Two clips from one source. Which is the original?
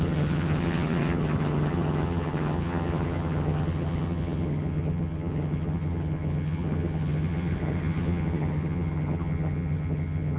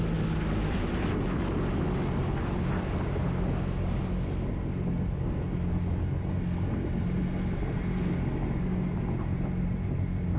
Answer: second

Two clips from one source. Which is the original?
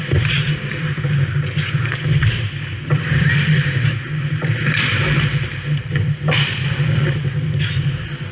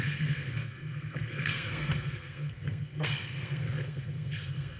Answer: first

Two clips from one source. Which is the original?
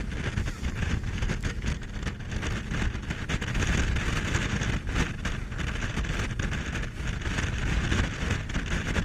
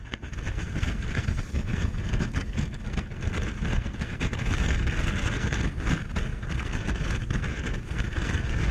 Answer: first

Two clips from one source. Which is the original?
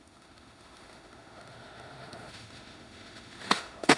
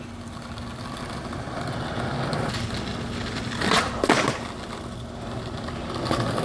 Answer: second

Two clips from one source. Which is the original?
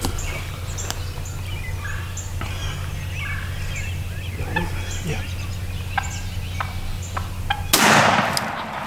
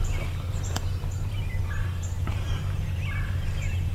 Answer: first